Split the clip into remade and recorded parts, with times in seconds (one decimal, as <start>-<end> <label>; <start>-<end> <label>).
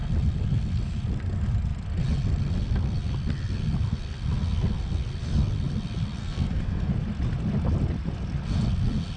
0.0-6.2 recorded; 6.2-6.9 remade; 6.9-9.2 recorded